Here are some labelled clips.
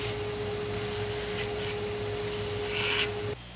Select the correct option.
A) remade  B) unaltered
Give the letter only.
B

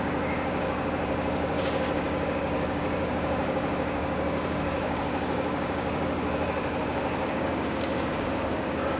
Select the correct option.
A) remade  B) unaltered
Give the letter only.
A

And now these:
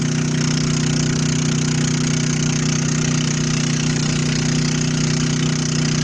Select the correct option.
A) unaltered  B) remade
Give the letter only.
A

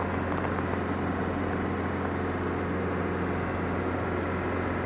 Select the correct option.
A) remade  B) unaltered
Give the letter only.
B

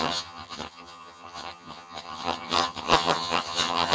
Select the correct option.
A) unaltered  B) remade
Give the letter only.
B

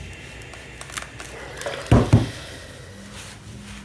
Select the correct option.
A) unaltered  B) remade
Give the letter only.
A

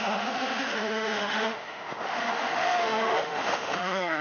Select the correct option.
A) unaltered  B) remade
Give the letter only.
B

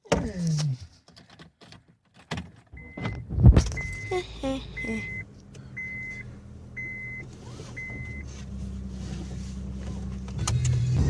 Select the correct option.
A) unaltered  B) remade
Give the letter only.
A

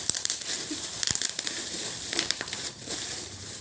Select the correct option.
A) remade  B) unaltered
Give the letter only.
A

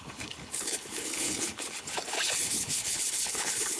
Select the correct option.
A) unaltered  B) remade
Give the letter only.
B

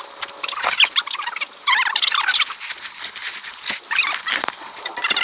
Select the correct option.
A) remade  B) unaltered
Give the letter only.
B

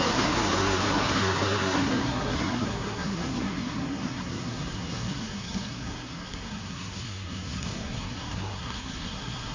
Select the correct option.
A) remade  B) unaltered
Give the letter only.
A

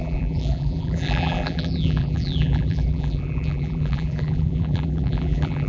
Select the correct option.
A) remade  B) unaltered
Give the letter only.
A